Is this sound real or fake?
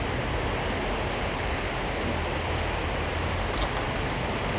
real